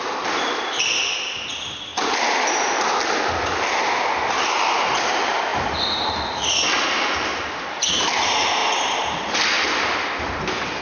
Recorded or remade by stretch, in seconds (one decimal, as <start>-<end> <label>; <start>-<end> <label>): 0.0-8.6 recorded; 8.6-9.7 remade; 9.7-10.8 recorded